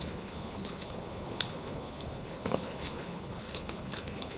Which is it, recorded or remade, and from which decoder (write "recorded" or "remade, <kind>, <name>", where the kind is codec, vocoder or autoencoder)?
remade, codec, HILCodec